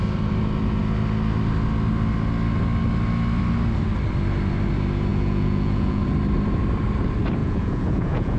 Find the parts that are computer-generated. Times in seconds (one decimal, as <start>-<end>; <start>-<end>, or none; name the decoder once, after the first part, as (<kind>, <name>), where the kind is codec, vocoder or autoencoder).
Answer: 5.1-6.0 (vocoder, Vocos); 7.4-8.4